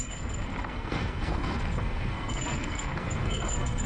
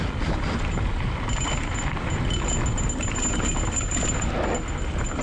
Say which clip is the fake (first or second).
first